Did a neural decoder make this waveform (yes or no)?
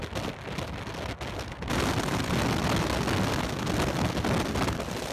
no